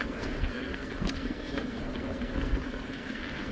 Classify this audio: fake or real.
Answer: fake